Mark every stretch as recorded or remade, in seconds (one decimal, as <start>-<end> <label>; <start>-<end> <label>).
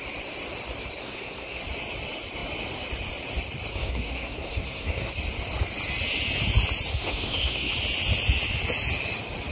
0.0-1.0 recorded; 1.0-1.6 remade; 1.6-3.7 recorded; 3.7-5.1 remade; 5.1-6.9 recorded; 6.9-7.7 remade; 7.7-9.5 recorded